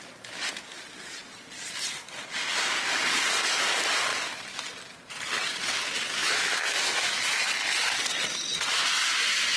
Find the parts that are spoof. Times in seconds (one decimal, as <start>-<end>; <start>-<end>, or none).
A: 6.2-7.2